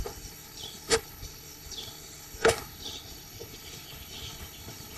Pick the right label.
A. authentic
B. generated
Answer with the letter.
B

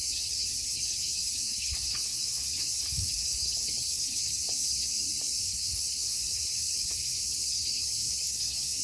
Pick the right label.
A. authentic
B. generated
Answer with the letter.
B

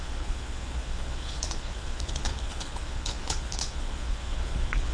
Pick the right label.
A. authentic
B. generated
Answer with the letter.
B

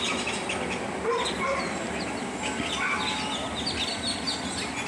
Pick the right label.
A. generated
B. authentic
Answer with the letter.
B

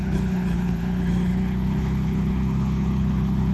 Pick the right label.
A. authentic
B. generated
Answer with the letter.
B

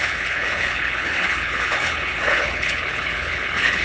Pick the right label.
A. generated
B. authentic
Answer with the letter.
A